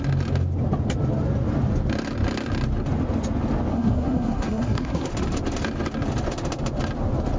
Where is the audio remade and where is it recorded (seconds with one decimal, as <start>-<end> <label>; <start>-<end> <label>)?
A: 0.0-3.7 recorded; 3.7-5.1 remade; 5.1-7.4 recorded